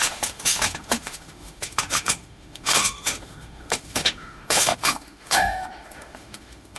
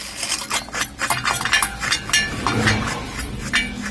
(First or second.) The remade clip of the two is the first